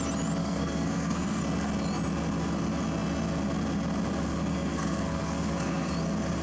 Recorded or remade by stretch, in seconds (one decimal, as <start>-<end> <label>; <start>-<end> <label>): 0.0-0.4 recorded; 0.4-1.4 remade; 1.4-4.5 recorded; 4.5-5.9 remade; 5.9-6.4 recorded

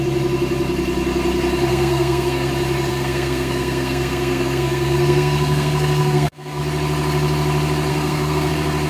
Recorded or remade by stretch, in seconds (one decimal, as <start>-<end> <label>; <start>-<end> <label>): 0.0-1.7 recorded; 1.7-2.5 remade; 2.5-2.9 recorded; 2.9-6.6 remade; 6.6-7.9 recorded; 7.9-8.5 remade; 8.5-8.9 recorded

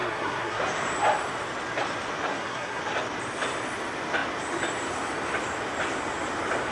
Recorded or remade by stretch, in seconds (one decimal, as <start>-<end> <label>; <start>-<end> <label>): 0.0-0.6 remade; 0.6-2.3 recorded; 2.3-2.8 remade; 2.8-6.7 recorded